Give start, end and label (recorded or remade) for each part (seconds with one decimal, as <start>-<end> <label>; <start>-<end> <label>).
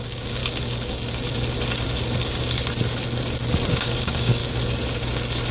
0.0-0.4 remade; 0.4-3.7 recorded; 3.7-4.4 remade; 4.4-5.5 recorded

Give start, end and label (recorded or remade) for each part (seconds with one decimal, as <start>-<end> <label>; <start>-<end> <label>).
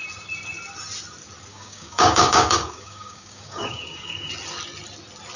0.0-1.5 recorded; 1.5-4.3 remade; 4.3-5.4 recorded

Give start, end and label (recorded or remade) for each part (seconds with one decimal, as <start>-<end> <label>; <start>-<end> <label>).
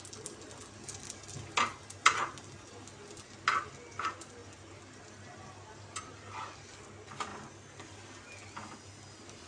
0.0-9.5 recorded